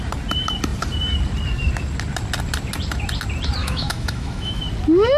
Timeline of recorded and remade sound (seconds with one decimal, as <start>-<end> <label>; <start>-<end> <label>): 0.0-3.6 recorded; 3.6-4.6 remade; 4.6-5.2 recorded